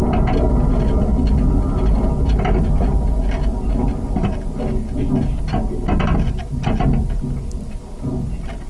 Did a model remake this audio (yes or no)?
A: no